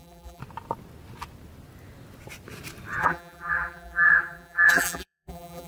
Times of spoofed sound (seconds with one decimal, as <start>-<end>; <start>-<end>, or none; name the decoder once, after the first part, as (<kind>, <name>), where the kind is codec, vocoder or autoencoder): 0.0-0.4 (vocoder, BigVGAN v2); 3.0-5.7